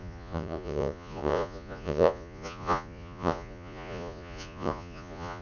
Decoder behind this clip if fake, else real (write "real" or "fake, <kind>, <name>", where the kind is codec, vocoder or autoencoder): fake, vocoder, Vocos